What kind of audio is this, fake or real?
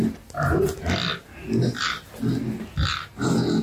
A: real